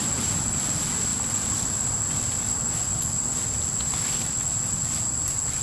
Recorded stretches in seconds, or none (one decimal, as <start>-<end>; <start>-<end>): 0.0-5.6